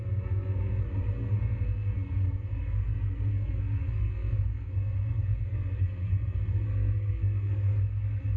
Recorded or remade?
remade